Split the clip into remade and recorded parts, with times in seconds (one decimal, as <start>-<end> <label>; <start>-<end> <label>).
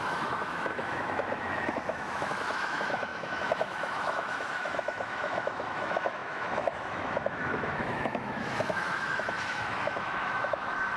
0.0-11.0 remade